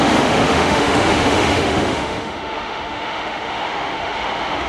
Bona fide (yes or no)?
no